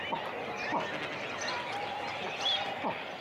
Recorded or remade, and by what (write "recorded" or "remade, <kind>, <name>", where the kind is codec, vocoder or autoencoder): recorded